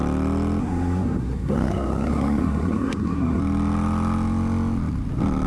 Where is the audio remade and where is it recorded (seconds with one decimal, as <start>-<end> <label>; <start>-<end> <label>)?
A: 0.0-0.6 recorded; 0.6-3.4 remade; 3.4-5.5 recorded